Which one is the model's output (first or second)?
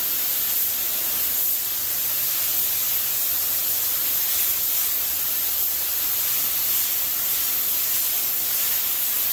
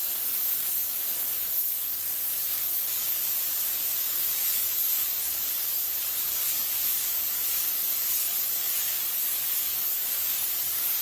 second